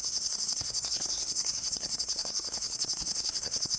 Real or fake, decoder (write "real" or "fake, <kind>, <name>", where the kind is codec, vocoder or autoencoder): fake, codec, SNAC